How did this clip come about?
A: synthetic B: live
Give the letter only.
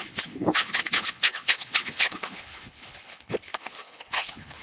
A